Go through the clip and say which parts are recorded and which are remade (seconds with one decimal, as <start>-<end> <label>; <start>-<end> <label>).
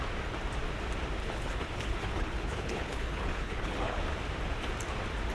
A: 0.0-1.2 recorded; 1.2-4.0 remade; 4.0-5.3 recorded